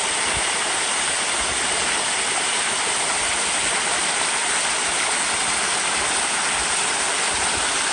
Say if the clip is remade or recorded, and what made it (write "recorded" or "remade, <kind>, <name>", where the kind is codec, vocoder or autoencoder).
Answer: remade, vocoder, BigVGAN v2